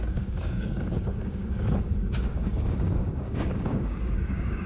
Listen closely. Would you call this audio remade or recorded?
remade